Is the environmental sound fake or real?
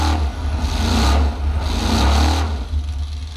real